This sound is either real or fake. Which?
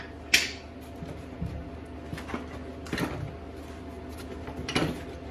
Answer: real